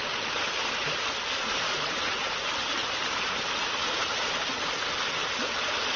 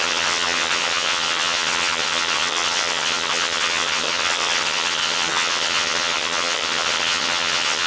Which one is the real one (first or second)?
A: first